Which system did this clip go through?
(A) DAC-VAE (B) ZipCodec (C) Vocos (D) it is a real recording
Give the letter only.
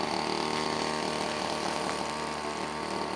D